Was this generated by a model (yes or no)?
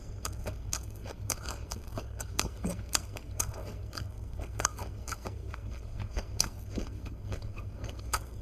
yes